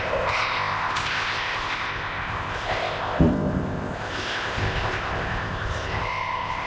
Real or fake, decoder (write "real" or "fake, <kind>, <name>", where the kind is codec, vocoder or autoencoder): fake, codec, ZipCodec